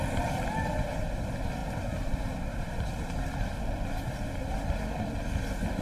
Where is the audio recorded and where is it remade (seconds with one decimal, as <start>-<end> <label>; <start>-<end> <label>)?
0.0-1.6 recorded; 1.6-3.1 remade; 3.1-5.8 recorded